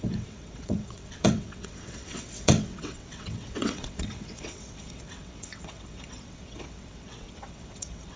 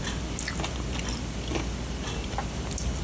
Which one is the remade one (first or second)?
first